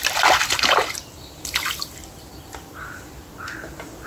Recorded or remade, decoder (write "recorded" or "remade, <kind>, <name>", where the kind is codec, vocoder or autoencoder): remade, vocoder, BigVGAN v2